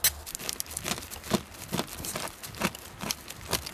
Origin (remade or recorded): recorded